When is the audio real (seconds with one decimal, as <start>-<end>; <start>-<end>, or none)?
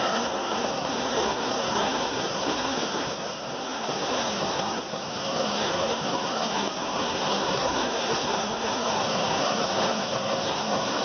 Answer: none